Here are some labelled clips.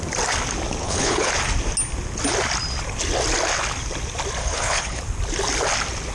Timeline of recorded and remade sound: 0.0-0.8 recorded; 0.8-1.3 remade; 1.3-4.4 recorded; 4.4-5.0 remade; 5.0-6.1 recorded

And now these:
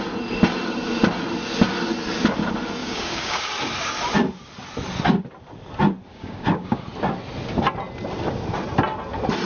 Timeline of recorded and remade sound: 0.0-2.8 recorded; 2.8-3.4 remade; 3.4-6.1 recorded; 6.1-6.8 remade; 6.8-9.5 recorded